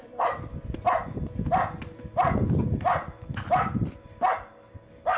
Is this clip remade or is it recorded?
recorded